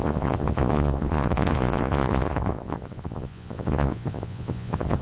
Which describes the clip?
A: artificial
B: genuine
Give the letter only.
A